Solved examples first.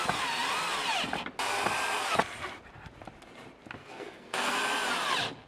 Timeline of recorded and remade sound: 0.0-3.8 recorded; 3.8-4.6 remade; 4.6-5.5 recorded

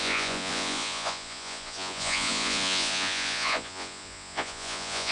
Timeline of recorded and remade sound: 0.0-5.1 remade

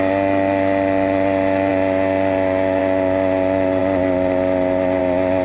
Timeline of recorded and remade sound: 0.0-5.4 recorded

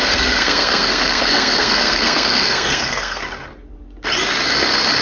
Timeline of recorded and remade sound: 0.0-3.2 remade; 3.2-5.0 recorded